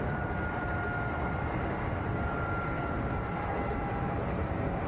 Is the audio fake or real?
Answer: fake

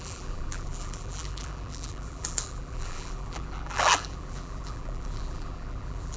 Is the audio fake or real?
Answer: fake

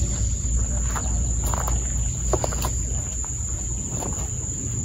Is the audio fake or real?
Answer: real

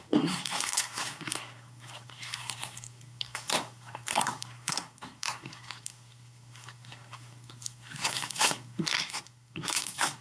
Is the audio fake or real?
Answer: fake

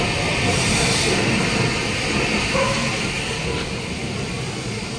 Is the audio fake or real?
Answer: real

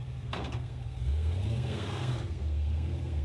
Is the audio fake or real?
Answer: fake